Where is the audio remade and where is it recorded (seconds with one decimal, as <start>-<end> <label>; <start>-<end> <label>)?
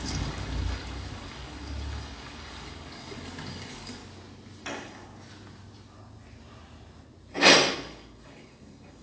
0.0-4.0 remade; 4.0-4.6 recorded; 4.6-5.1 remade; 5.1-7.7 recorded; 7.7-9.0 remade